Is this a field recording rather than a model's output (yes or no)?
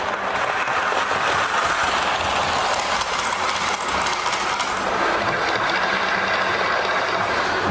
yes